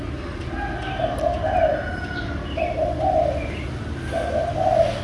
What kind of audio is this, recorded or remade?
recorded